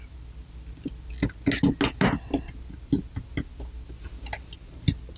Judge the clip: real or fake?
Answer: real